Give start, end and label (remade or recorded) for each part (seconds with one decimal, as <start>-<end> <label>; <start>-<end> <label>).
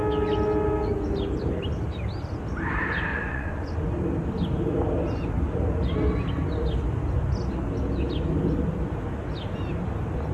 0.0-3.1 recorded; 3.1-3.7 remade; 3.7-10.3 recorded